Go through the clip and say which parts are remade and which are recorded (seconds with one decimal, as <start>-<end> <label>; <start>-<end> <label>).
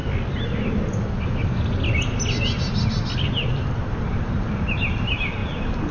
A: 0.0-3.5 recorded; 3.5-5.9 remade